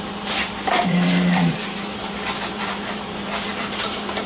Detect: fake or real fake